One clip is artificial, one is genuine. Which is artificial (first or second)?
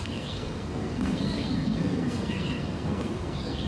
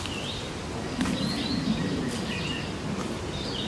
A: first